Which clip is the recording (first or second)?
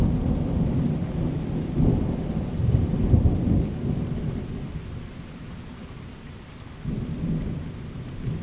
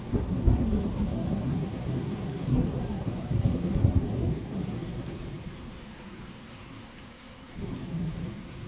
first